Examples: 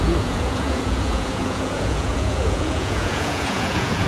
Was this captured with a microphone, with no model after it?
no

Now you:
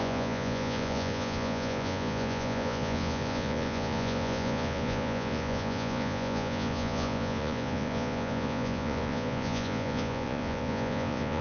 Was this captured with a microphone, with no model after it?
no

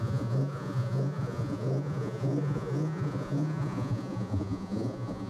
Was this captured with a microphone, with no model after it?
no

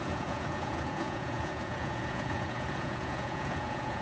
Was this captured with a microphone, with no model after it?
no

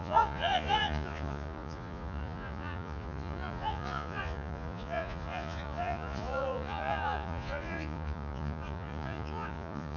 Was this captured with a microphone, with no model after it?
no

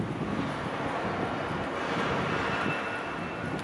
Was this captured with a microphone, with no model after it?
yes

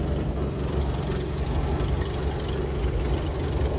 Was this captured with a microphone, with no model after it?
yes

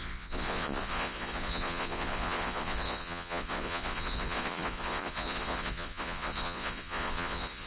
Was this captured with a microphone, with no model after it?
no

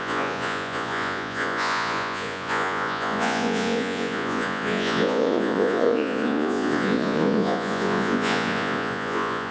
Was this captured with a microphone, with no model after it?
no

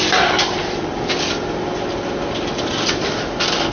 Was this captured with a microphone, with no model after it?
yes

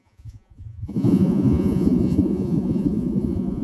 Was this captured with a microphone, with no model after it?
no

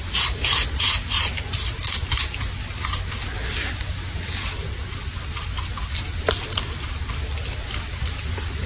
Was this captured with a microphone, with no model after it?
yes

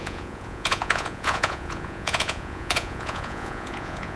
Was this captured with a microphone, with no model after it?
no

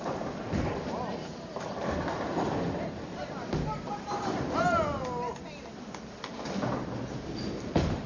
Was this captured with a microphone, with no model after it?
yes